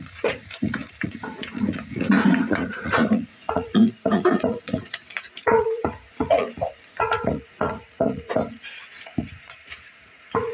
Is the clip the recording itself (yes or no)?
no